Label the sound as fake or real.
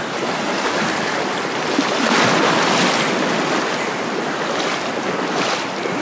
real